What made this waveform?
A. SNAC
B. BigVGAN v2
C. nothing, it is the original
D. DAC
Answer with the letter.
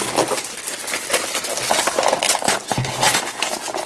C